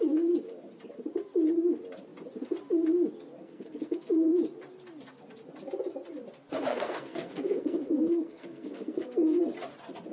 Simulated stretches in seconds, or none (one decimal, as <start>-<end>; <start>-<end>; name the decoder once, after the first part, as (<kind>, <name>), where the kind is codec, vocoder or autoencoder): 3.4-4.4 (codec, SNAC); 6.7-9.4